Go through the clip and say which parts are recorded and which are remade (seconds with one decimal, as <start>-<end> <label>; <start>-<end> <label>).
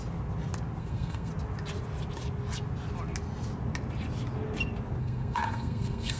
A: 0.0-0.8 recorded; 0.8-1.3 remade; 1.3-5.0 recorded; 5.0-6.2 remade